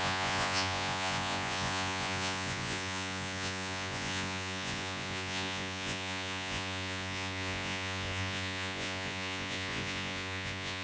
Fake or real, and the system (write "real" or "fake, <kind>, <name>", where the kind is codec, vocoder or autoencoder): fake, vocoder, Vocos